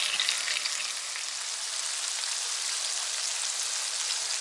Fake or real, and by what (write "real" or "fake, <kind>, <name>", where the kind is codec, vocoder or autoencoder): real